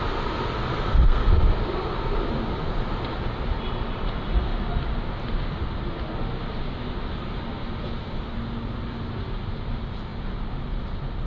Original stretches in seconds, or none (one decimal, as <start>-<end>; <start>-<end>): 0.0-0.7; 1.3-11.3